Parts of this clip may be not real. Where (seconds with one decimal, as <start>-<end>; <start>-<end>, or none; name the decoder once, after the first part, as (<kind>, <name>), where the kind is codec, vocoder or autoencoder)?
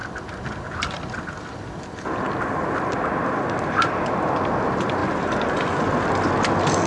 none